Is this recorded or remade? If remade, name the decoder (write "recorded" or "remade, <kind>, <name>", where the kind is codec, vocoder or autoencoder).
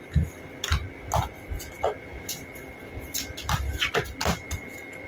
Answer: recorded